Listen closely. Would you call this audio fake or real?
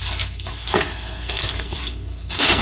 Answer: fake